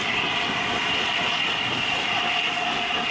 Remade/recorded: recorded